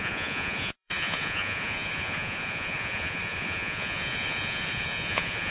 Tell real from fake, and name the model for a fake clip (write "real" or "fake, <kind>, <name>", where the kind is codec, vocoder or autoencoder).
fake, vocoder, Vocos